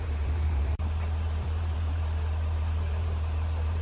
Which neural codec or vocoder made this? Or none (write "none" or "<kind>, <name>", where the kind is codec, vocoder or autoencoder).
vocoder, BigVGAN v2